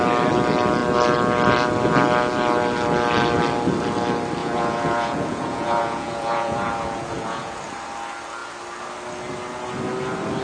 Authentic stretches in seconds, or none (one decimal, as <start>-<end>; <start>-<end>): 0.0-4.4; 7.6-10.4